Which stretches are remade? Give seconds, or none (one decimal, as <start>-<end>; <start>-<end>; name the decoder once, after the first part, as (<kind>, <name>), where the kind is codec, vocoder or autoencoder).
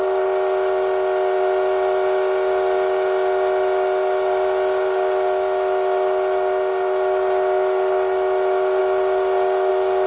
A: none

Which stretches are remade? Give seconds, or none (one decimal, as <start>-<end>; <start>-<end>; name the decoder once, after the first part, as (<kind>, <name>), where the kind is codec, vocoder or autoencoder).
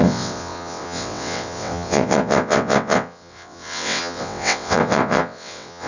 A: 0.0-5.9 (vocoder, WaveNeXt)